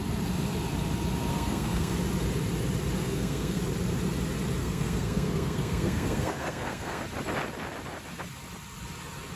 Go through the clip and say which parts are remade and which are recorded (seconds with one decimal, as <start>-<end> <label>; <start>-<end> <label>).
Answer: 0.0-1.3 recorded; 1.3-1.9 remade; 1.9-3.0 recorded; 3.0-3.6 remade; 3.6-4.6 recorded; 4.6-7.0 remade; 7.0-9.4 recorded